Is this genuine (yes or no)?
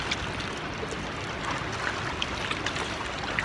yes